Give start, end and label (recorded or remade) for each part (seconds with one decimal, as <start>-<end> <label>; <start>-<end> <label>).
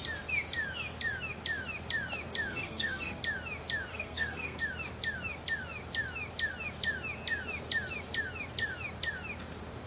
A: 0.0-2.5 recorded; 2.5-3.2 remade; 3.2-3.9 recorded; 3.9-4.6 remade; 4.6-9.9 recorded